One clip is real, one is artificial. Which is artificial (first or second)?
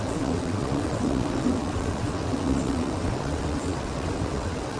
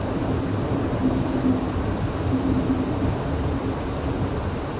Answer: first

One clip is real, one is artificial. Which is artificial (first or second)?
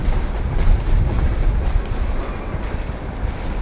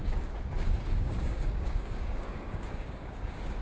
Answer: second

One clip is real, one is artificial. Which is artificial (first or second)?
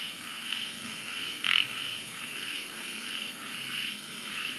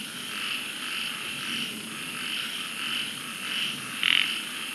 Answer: first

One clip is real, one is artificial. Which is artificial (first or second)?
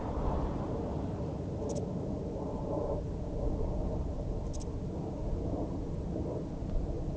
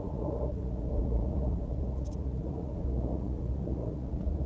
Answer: second